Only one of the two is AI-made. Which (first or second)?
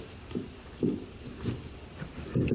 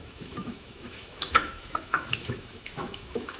second